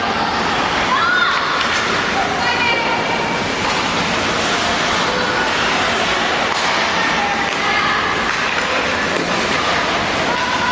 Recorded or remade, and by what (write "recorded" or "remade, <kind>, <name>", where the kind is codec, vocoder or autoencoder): recorded